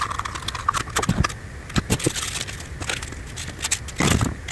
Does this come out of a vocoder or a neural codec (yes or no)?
no